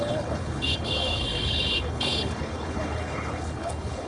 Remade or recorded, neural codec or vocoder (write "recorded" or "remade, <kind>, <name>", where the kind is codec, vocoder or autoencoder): remade, codec, HILCodec